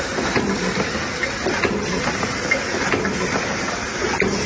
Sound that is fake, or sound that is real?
real